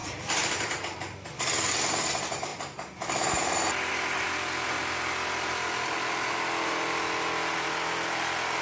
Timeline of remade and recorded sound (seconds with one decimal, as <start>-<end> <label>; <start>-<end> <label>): 0.0-2.1 remade; 2.1-8.6 recorded

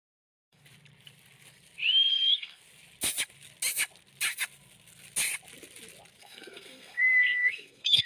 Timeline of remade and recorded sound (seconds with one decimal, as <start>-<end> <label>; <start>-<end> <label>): 0.0-0.6 remade; 0.6-2.1 recorded; 2.1-2.6 remade; 2.6-6.2 recorded; 6.2-8.1 remade

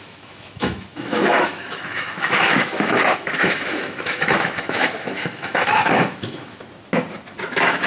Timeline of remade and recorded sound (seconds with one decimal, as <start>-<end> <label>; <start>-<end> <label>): 0.0-6.6 remade; 6.6-7.5 recorded; 7.5-7.9 remade

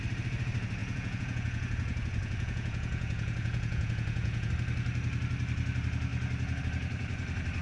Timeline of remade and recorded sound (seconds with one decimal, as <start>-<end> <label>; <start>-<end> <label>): 0.0-0.8 recorded; 0.8-4.5 remade; 4.5-7.6 recorded

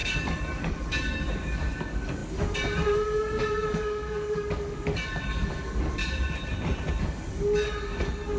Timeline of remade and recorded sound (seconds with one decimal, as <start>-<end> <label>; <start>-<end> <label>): 0.0-6.0 remade; 6.0-7.0 recorded; 7.0-8.4 remade

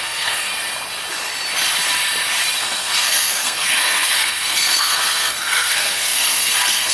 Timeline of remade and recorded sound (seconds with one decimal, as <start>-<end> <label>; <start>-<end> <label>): 0.0-0.5 remade; 0.5-2.6 recorded; 2.6-6.9 remade